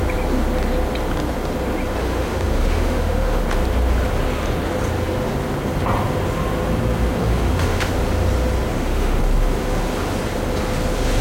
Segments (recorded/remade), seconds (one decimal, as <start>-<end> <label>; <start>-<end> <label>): 0.0-2.0 recorded; 2.0-3.4 remade; 3.4-7.2 recorded; 7.2-7.9 remade; 7.9-8.7 recorded; 8.7-9.2 remade; 9.2-11.2 recorded